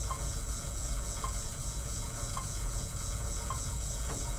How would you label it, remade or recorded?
remade